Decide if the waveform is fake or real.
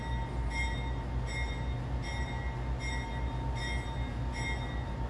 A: real